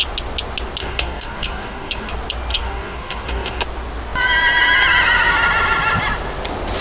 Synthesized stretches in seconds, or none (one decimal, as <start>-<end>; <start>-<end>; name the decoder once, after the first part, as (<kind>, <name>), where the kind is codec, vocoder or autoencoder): 0.8-2.1 (codec, DAC); 2.5-3.6